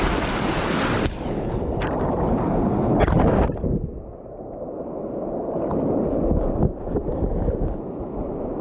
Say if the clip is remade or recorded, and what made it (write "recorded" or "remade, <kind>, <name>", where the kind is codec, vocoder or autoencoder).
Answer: recorded